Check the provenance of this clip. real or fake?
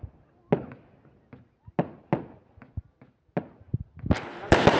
real